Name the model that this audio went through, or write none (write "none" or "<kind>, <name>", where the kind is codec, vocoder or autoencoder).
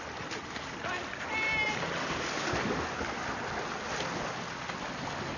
none